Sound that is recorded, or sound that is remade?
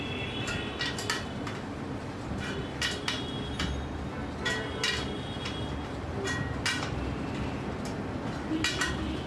recorded